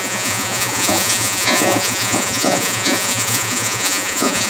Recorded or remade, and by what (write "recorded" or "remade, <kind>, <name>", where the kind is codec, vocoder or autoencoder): remade, vocoder, Vocos